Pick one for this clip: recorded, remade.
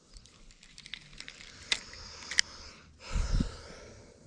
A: recorded